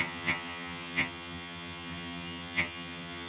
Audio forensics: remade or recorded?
remade